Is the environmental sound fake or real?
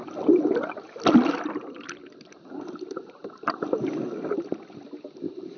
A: real